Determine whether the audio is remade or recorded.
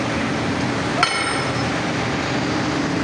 recorded